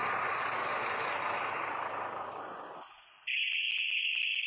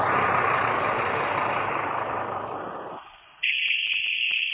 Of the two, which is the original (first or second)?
first